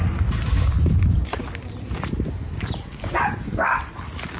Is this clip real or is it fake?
fake